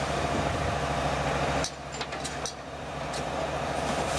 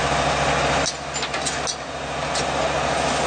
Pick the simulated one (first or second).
first